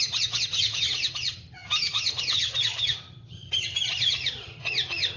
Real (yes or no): no